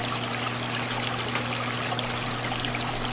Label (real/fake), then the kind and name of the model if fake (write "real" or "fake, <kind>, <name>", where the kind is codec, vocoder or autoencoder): real